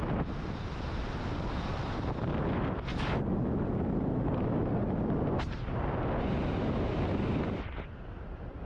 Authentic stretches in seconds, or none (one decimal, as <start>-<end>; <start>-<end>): 0.0-2.9; 4.7-8.7